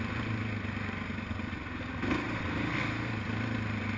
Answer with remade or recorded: recorded